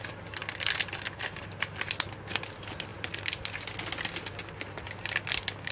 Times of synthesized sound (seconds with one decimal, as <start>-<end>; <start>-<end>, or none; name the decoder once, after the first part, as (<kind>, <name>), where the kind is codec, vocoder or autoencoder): none